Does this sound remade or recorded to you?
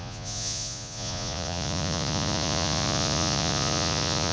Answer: remade